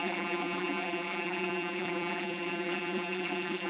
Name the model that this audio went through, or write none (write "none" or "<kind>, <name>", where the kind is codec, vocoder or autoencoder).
vocoder, BigVGAN v2